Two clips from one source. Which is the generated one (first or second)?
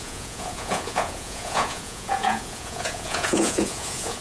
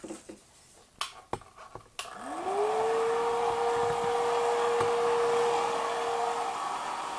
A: first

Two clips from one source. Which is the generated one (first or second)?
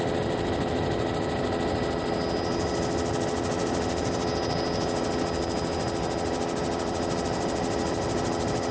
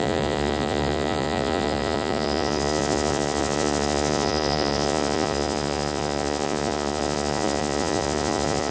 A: second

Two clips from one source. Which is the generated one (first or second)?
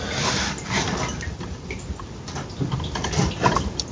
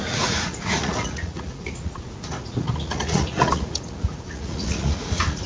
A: second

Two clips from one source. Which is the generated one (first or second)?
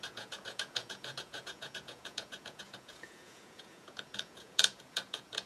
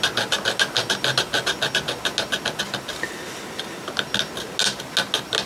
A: first